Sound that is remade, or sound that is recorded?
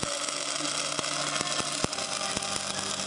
recorded